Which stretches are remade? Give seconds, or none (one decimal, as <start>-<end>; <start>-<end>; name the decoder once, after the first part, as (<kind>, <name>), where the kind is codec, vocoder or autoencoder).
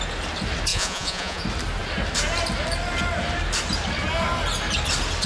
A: 0.7-1.4 (vocoder, Vocos)